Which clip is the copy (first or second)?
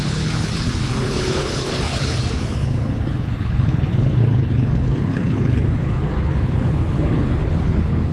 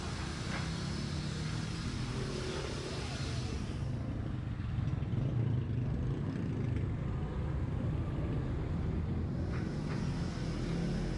first